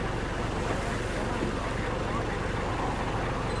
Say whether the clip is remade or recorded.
recorded